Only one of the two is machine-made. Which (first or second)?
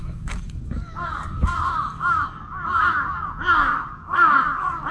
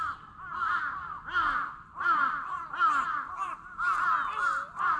first